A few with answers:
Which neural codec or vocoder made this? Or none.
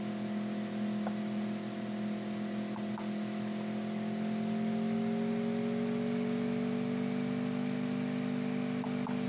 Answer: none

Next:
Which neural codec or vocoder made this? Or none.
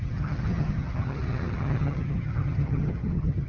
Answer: vocoder, HiFi-GAN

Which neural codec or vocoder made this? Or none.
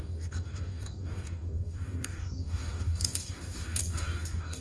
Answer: codec, DAC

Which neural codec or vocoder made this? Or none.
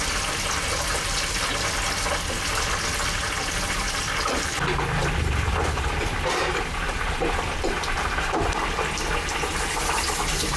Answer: none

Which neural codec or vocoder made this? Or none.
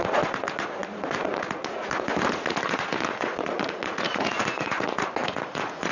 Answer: vocoder, Vocos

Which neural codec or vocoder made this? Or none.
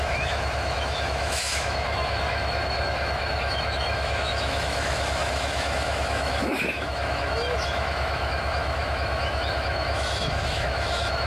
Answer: autoencoder, DAC-VAE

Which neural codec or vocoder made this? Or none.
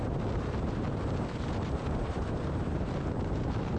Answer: vocoder, BigVGAN v2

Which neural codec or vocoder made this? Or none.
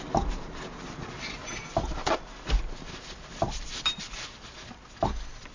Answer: none